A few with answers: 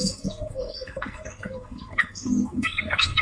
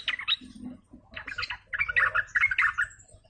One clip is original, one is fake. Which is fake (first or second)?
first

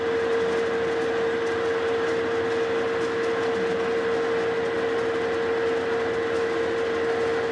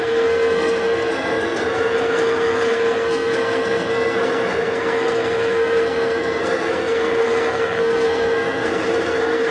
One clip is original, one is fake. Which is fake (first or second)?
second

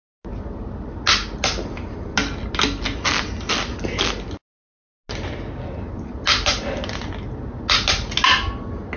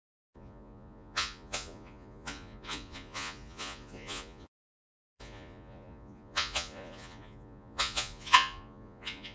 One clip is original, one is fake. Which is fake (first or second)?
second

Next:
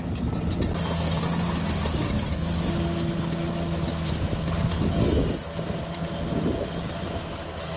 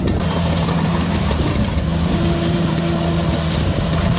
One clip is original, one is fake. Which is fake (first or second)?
second